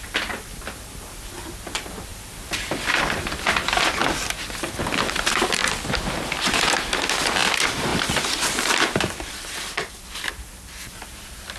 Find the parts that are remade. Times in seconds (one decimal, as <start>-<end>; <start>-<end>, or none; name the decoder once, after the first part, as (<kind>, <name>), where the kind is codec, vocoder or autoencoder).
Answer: 0.0-5.6 (vocoder, BigVGAN v2); 6.1-11.6